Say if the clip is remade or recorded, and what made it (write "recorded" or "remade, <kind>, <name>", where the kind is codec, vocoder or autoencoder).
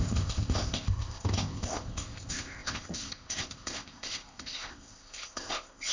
remade, codec, ZipCodec